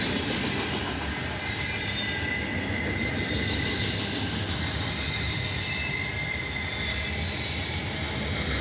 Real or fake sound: real